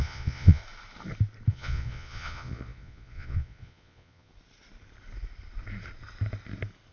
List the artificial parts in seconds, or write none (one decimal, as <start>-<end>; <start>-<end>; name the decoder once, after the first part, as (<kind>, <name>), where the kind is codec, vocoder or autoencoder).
0.0-0.6 (vocoder, Vocos); 1.5-4.3

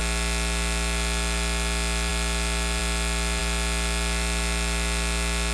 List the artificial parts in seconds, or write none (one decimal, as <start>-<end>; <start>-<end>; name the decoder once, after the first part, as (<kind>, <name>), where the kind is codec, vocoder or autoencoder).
none

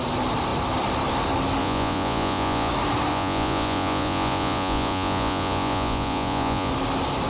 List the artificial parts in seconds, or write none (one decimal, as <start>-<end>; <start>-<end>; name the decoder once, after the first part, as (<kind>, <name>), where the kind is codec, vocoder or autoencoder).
1.6-2.7 (vocoder, Vocos); 3.1-6.7

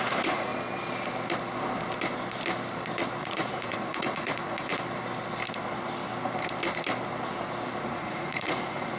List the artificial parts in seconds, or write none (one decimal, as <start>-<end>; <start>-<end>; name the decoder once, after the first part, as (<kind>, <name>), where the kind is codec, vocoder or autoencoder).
0.0-0.5 (vocoder, Vocos); 3.2-4.7; 7.8-9.0

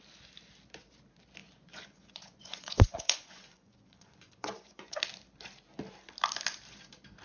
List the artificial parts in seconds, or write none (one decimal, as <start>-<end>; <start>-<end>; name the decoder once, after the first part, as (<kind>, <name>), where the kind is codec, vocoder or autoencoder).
1.4-5.0 (vocoder, Vocos)

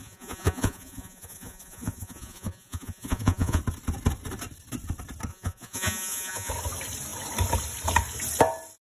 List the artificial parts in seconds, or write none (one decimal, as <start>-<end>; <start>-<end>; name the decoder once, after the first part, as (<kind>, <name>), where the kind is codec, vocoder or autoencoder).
0.0-3.6 (vocoder, Vocos); 5.3-6.5

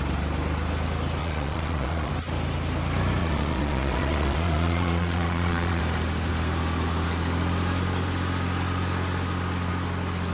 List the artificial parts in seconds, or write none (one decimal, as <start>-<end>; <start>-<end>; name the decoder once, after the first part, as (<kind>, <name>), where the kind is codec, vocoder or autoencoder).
1.2-2.1 (vocoder, Vocos); 3.2-5.8

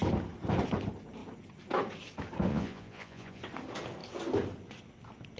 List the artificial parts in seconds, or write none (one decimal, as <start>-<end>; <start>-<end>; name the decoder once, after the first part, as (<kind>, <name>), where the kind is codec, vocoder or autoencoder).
2.5-3.4 (vocoder, Vocos)